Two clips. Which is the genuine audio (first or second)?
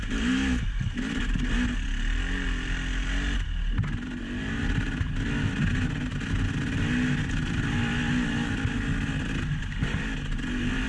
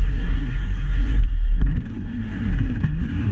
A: first